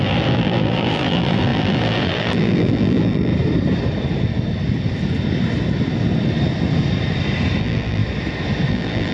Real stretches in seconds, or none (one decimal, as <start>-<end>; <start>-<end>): 3.3-7.6; 8.0-8.7